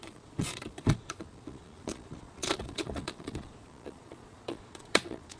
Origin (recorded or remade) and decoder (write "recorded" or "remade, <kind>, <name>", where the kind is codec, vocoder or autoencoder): remade, vocoder, Vocos